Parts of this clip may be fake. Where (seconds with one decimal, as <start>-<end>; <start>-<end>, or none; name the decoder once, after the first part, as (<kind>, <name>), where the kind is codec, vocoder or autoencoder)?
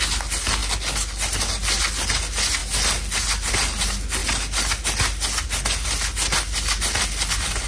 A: none